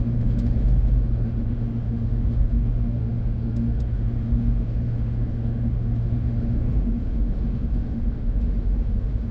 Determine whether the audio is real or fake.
fake